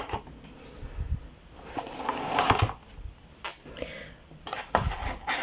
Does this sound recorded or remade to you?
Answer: recorded